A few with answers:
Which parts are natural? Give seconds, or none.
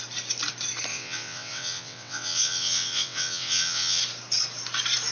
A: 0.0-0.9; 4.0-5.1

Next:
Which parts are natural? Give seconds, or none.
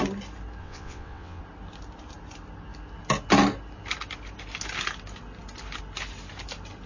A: 0.0-0.6; 1.4-6.9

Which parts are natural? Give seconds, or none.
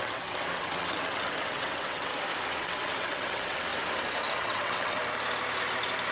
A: 2.1-2.6; 3.7-4.3; 5.0-6.1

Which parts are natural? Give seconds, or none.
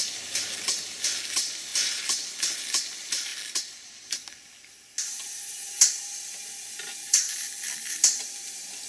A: 0.0-8.9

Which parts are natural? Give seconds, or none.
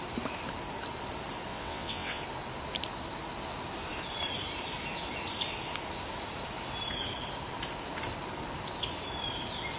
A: 0.0-1.5; 2.2-9.8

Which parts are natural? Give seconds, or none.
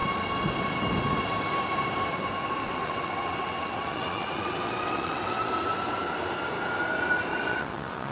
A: 0.0-2.6; 5.5-7.3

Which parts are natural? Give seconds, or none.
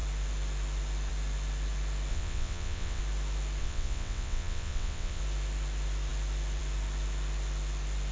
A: 0.0-2.1; 3.0-3.6; 5.2-8.1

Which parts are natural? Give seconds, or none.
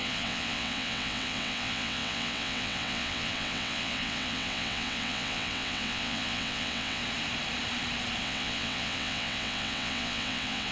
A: 7.0-8.2